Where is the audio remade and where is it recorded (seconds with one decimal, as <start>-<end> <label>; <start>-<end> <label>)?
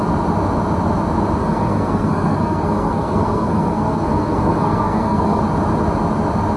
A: 0.0-1.4 recorded; 1.4-5.4 remade; 5.4-6.6 recorded